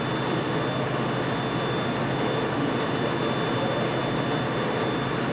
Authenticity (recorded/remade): recorded